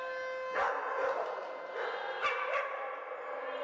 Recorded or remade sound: recorded